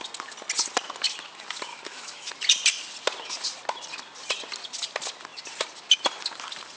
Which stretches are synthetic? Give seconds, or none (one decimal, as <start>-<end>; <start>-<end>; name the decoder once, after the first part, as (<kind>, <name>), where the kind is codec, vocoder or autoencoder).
1.7-2.3 (autoencoder, DAC-VAE)